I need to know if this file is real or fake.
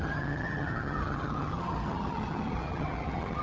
fake